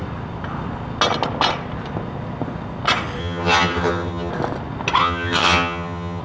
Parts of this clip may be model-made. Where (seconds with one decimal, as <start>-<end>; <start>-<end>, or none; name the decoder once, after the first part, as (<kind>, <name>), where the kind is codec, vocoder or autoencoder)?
3.2-4.3 (vocoder, HiFi-GAN); 5.0-6.2